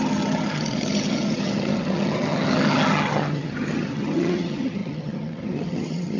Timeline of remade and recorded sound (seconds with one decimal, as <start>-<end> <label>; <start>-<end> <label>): 0.0-6.2 remade